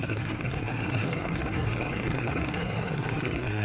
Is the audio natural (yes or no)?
no